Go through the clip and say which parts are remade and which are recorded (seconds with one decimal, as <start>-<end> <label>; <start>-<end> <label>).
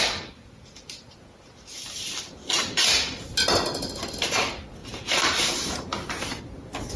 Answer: 0.0-4.8 recorded; 4.8-6.4 remade; 6.4-7.0 recorded